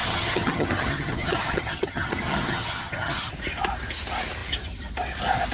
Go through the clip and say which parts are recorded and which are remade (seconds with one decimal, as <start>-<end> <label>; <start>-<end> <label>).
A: 0.0-3.3 remade; 3.3-5.5 recorded